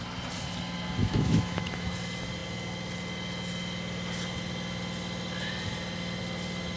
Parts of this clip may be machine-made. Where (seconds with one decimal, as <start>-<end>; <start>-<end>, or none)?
1.0-1.9